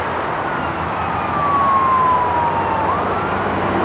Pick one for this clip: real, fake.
real